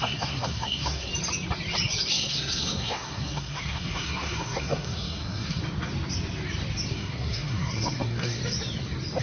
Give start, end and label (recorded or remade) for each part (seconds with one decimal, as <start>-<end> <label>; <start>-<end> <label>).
0.0-1.1 remade; 1.1-2.1 recorded; 2.1-5.6 remade; 5.6-6.9 recorded; 6.9-8.4 remade; 8.4-9.2 recorded